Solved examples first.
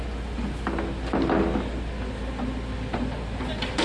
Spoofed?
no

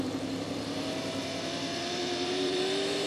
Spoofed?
yes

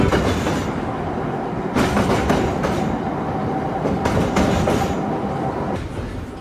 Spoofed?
no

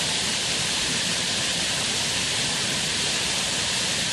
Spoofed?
yes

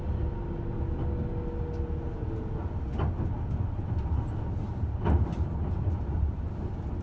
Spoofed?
no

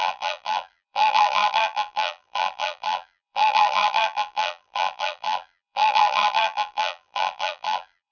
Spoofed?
yes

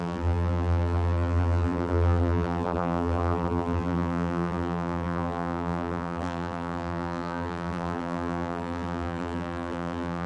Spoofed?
yes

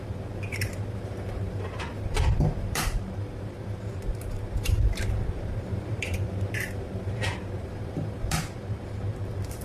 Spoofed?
yes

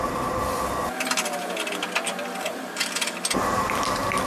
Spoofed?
no